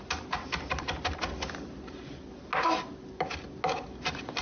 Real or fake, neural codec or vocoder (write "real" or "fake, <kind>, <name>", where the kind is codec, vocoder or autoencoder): real